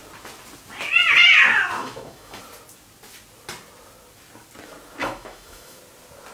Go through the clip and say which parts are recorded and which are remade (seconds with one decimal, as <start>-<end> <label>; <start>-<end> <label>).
0.0-1.8 recorded; 1.8-2.4 remade; 2.4-5.0 recorded; 5.0-5.8 remade; 5.8-6.3 recorded